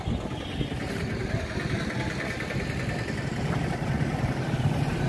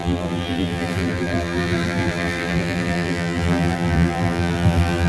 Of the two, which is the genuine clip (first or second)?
first